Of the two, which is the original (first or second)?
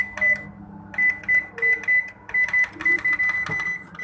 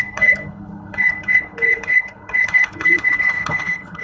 first